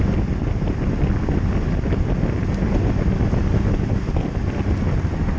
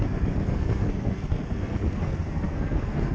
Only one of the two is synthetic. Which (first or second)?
second